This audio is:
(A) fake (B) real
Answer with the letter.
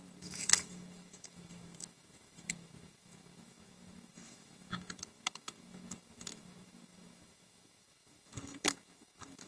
A